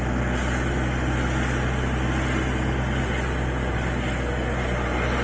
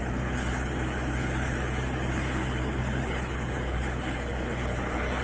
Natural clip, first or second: first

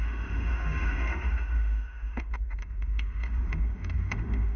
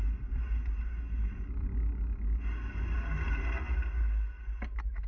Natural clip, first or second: second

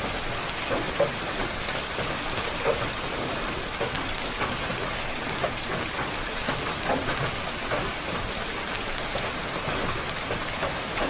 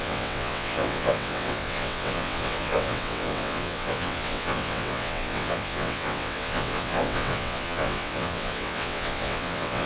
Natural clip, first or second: first